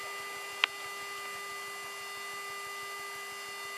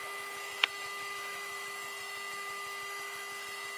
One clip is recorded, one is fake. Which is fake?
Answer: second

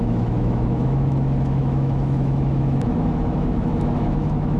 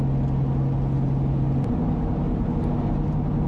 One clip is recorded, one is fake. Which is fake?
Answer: first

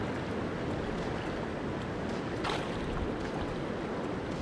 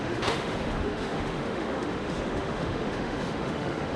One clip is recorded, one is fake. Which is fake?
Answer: second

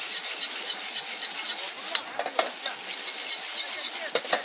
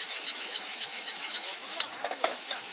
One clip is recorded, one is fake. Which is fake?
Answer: second